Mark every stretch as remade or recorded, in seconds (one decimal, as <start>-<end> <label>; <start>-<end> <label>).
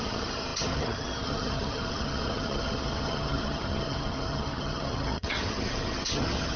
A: 0.0-6.6 remade